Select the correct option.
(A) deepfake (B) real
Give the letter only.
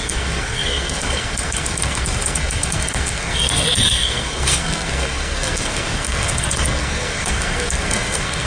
A